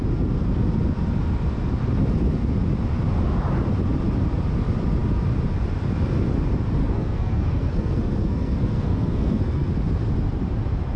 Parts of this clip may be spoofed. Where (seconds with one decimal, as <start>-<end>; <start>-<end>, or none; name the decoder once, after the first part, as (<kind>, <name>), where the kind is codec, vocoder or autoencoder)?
6.8-9.7 (codec, SNAC)